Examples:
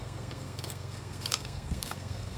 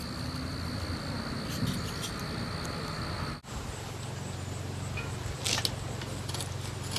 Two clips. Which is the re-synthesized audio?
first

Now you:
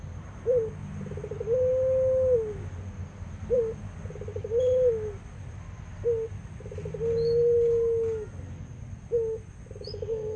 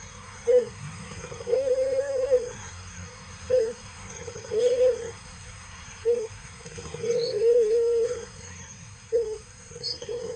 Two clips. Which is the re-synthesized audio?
second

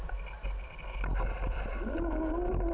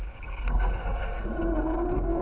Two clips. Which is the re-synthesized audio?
second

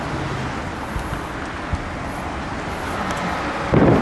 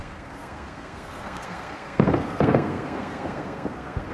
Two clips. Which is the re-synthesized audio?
second